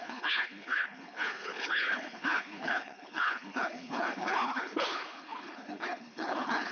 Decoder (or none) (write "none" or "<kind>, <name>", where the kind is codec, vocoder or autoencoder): codec, HILCodec